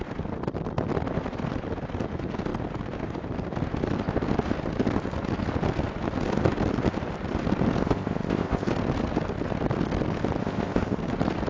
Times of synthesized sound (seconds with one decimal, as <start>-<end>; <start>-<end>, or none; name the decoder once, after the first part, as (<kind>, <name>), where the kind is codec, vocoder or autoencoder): 7.8-8.7 (codec, ZipCodec); 10.4-11.0